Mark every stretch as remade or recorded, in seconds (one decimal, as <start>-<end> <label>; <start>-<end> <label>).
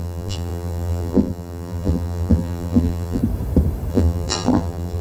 0.0-3.2 remade; 3.2-3.9 recorded; 3.9-5.0 remade